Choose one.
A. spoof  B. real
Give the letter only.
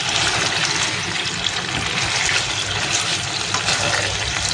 B